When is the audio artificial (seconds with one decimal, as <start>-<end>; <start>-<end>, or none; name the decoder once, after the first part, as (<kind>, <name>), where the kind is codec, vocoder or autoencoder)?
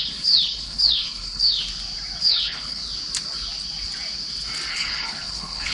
0.0-1.6 (codec, HILCodec); 2.2-2.8; 4.7-5.7